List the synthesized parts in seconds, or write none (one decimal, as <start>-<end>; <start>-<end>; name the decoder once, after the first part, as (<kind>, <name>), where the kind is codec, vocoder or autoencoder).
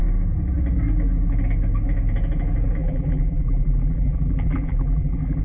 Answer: 2.8-5.4 (vocoder, BigVGAN v2)